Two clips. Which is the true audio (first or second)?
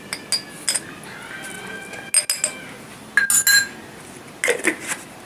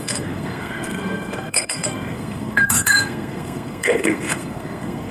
first